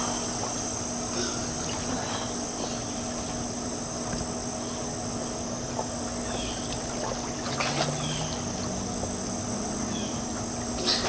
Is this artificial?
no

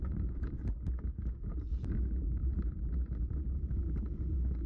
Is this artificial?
yes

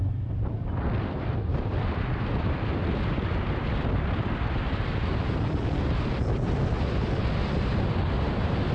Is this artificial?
yes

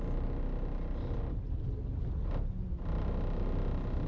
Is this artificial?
no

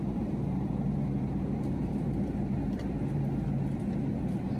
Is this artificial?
yes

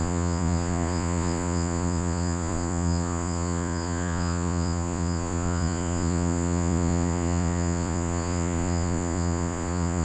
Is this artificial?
yes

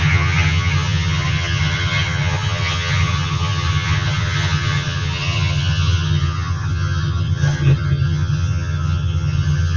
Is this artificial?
yes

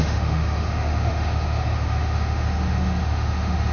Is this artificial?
yes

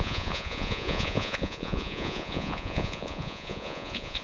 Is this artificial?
yes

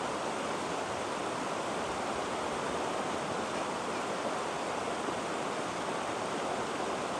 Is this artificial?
no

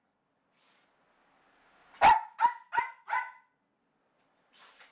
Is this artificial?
no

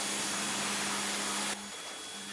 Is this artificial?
no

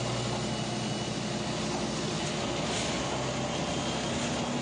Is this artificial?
no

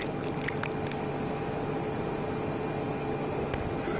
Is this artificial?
no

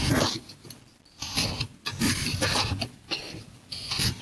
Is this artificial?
no